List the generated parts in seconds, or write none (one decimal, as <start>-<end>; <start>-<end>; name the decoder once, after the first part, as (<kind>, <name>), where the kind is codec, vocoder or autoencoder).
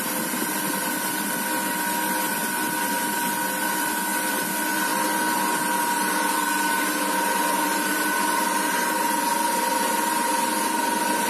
none